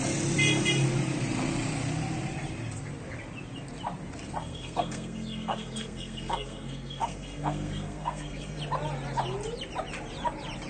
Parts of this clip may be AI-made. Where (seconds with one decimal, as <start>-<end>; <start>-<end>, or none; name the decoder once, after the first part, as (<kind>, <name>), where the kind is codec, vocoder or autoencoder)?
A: 4.4-8.6 (codec, SNAC)